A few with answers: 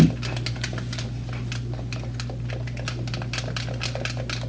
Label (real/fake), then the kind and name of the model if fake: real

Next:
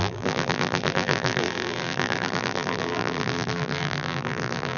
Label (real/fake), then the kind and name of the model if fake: fake, vocoder, BigVGAN v2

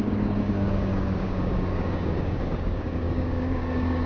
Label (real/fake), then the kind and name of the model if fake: fake, codec, DAC